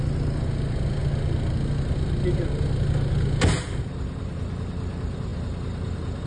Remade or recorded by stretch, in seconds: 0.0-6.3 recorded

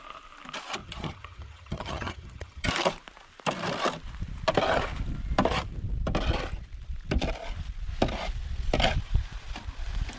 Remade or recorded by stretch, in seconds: 0.0-0.8 recorded; 0.8-2.7 remade; 2.7-10.2 recorded

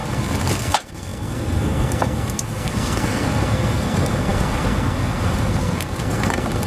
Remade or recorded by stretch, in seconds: 0.0-6.7 remade

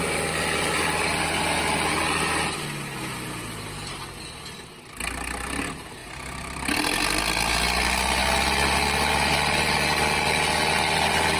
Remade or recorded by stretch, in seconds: 0.0-11.4 recorded

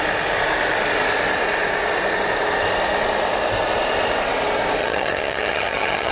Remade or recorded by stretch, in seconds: 0.0-4.8 recorded; 4.8-6.1 remade